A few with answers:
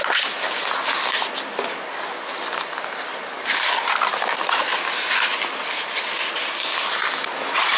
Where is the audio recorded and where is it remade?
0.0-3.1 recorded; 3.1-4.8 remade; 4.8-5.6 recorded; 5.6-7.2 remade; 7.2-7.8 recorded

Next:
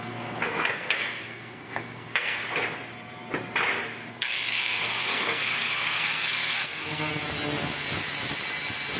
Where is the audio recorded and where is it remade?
0.0-2.4 remade; 2.4-4.1 recorded; 4.1-7.1 remade; 7.1-9.0 recorded

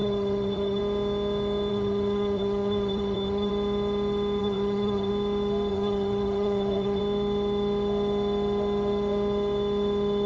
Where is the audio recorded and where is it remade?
0.0-0.8 remade; 0.8-1.7 recorded; 1.7-3.5 remade; 3.5-4.4 recorded; 4.4-5.1 remade; 5.1-5.7 recorded; 5.7-7.0 remade; 7.0-10.3 recorded

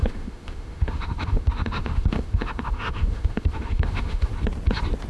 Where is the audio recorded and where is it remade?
0.0-4.3 remade; 4.3-5.1 recorded